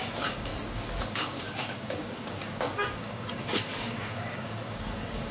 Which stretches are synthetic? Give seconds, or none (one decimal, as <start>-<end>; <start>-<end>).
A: 0.0-0.5; 1.1-5.3